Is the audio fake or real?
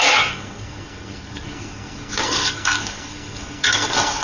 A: fake